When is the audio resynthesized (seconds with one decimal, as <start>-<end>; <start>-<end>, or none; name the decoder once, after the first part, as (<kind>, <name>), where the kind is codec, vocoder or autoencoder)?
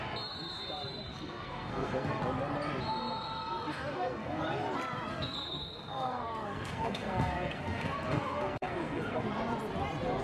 1.1-2.2 (codec, SNAC); 3.7-4.4; 5.1-9.2